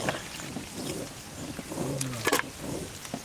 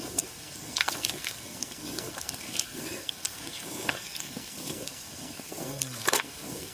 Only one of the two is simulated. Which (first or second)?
second